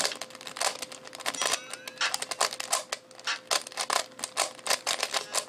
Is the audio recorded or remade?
recorded